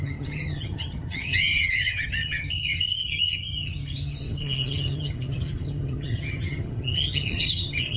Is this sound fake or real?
fake